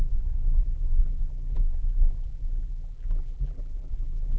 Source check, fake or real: fake